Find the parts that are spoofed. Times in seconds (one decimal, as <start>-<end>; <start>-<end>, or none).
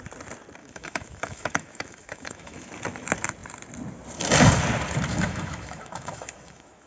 0.6-2.7; 5.1-6.9